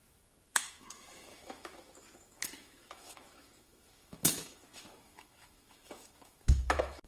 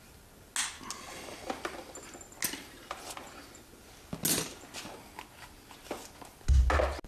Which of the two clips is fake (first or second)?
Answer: first